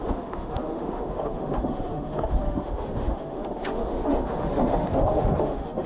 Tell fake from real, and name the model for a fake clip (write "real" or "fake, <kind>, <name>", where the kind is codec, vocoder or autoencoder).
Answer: fake, autoencoder, DAC-VAE